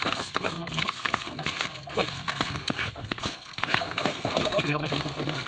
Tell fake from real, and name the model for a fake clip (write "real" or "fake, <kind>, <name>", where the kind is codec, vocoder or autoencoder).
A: fake, codec, SNAC